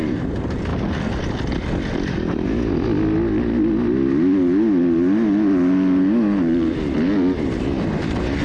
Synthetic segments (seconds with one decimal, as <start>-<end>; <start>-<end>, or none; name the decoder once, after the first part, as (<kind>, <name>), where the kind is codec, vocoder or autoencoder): none